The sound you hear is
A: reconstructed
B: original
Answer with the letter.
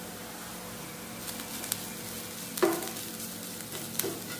B